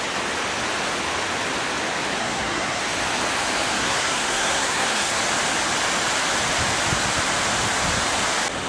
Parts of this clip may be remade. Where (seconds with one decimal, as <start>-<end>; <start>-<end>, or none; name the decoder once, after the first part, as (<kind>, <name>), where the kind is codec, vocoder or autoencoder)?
2.2-2.8 (codec, SNAC); 3.8-5.2